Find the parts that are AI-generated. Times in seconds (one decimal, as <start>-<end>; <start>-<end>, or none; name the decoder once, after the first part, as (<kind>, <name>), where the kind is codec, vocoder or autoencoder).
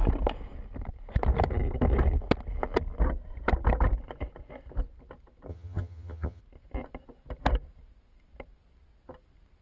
5.5-6.4 (vocoder, HiFi-GAN)